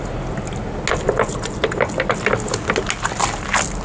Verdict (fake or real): real